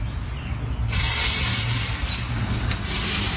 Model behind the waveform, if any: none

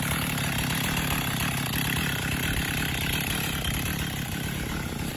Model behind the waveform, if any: none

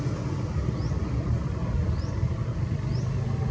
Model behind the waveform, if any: none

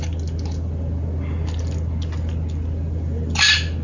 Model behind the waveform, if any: none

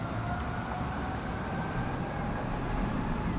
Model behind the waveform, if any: none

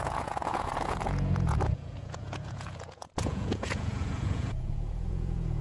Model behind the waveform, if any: vocoder, Vocos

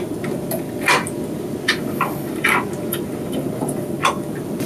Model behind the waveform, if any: none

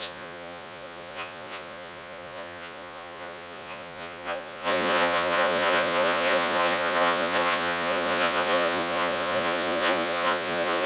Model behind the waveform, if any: vocoder, Vocos